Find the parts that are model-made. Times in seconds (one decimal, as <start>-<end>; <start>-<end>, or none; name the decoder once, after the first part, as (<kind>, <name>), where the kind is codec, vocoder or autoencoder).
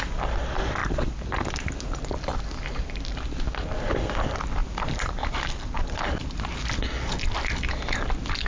4.6-6.2 (vocoder, BigVGAN v2)